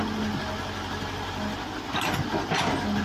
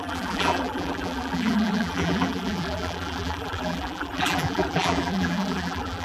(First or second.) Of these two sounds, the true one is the first